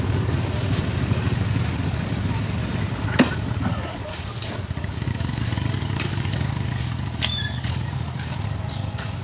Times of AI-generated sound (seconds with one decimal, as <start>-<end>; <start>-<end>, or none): 0.0-2.6; 3.5-9.2